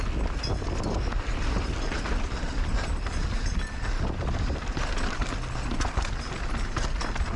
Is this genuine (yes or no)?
yes